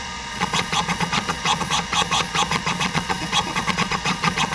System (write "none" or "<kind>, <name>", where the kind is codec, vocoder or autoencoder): vocoder, Vocos